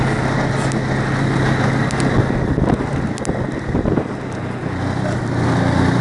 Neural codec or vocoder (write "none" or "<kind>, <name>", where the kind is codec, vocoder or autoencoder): none